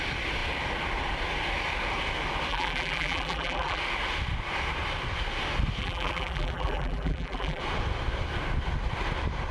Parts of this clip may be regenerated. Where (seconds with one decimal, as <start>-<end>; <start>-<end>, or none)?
2.5-3.8; 5.8-7.6